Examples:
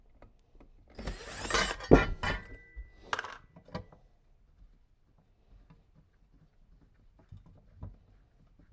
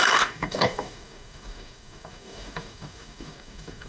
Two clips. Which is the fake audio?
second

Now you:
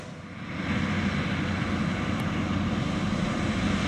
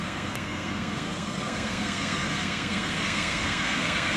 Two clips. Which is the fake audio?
second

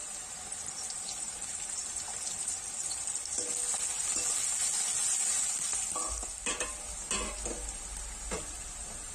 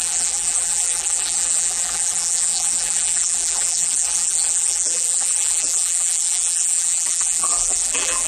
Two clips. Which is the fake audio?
second